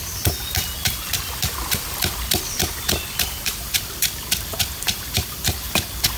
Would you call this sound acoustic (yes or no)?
no